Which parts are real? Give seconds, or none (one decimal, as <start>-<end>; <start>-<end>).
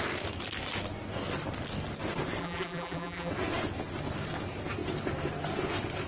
0.0-2.4; 3.3-6.1